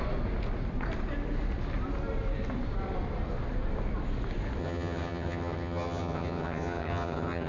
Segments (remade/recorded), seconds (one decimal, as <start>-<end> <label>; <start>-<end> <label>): 0.0-4.6 recorded; 4.6-7.5 remade